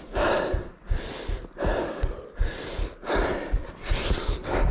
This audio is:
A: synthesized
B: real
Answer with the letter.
B